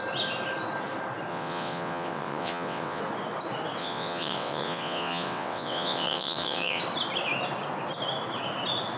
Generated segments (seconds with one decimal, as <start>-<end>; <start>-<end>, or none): 1.3-3.0; 3.8-6.8